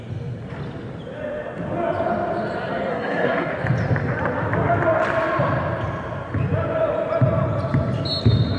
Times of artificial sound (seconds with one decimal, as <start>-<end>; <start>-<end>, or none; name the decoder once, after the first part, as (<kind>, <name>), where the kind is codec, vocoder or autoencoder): 2.9-3.5 (codec, SNAC)